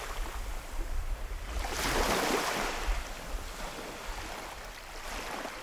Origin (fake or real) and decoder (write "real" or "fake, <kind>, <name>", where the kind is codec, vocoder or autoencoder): real